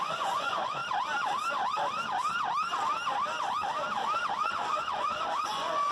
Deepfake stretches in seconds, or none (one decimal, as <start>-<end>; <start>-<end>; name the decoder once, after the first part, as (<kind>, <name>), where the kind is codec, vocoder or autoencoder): 0.0-0.8 (vocoder, Vocos); 4.3-5.9